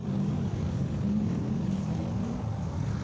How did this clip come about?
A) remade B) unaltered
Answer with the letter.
A